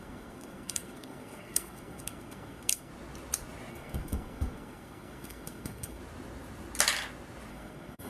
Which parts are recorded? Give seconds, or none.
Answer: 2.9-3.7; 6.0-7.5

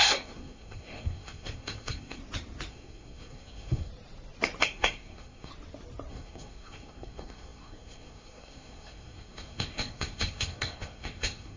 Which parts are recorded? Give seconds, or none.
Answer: 2.2-2.7; 3.9-4.6; 5.5-6.1

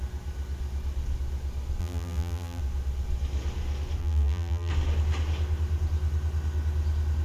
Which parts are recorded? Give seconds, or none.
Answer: 0.0-1.8; 2.6-4.0; 4.7-7.2

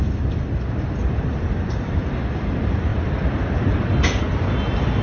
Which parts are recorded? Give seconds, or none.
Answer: 0.0-1.0; 2.0-2.9; 4.2-5.0